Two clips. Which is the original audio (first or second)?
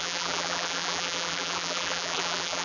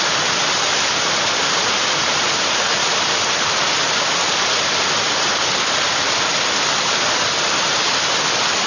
second